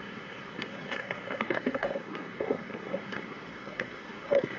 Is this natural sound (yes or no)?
no